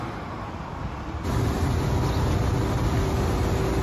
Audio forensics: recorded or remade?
recorded